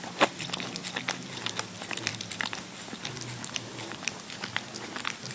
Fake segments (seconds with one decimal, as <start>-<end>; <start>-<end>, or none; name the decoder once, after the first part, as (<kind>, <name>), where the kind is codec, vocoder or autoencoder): none